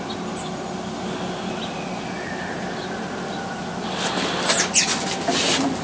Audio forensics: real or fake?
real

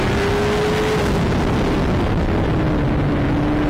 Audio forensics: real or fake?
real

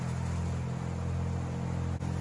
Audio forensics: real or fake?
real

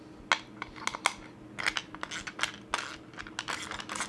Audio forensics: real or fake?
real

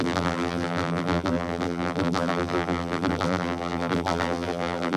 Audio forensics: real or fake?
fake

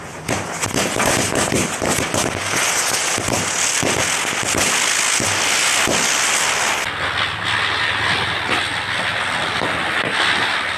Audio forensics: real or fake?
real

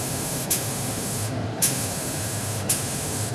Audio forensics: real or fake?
fake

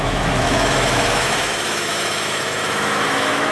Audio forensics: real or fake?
fake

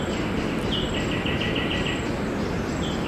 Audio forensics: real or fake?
real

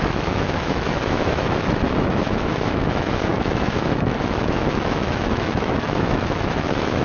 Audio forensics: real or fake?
fake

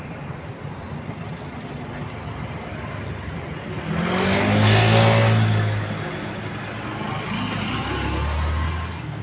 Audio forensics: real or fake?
real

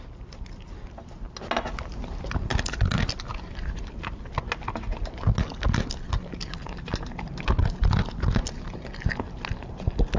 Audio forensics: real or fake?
real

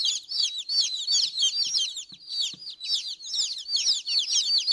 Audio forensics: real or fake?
real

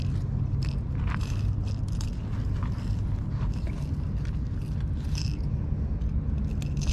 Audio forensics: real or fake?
real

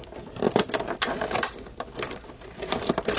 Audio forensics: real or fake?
real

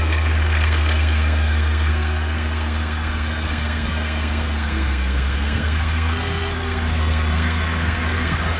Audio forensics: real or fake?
fake